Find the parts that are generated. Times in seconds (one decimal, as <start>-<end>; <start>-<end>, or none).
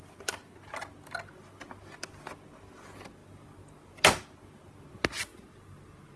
3.2-3.9; 5.3-6.2